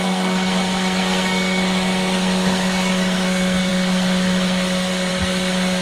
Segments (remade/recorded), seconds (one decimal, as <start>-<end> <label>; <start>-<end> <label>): 0.0-5.8 remade

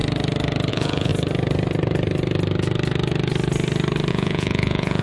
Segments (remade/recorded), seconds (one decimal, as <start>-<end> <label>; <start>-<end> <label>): 0.0-0.7 recorded; 0.7-1.1 remade; 1.1-4.1 recorded; 4.1-5.0 remade

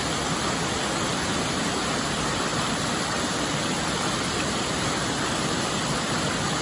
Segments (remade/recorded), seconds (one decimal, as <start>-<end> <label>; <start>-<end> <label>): 0.0-2.5 recorded; 2.5-3.8 remade; 3.8-6.6 recorded

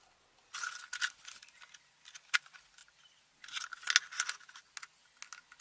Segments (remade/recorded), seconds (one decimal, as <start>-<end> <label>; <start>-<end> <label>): 0.0-5.6 recorded

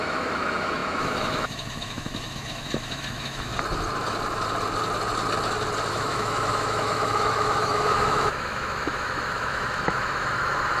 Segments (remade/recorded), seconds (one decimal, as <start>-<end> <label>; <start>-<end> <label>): 0.0-3.5 remade; 3.5-5.9 recorded; 5.9-10.8 remade